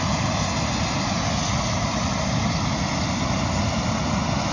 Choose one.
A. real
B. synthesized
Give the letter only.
A